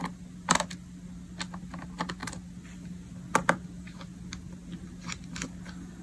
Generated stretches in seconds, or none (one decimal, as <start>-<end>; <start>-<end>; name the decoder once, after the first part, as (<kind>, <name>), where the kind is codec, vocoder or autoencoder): none

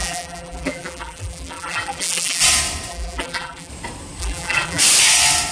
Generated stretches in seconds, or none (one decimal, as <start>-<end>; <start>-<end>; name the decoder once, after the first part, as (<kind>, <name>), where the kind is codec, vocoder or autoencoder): 0.0-2.4 (vocoder, BigVGAN v2); 2.9-3.7; 4.2-4.8

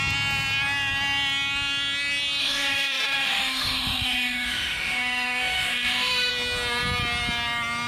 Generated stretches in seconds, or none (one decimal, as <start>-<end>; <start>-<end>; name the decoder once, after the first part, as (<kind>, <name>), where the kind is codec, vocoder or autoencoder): 2.4-6.3 (autoencoder, DAC-VAE)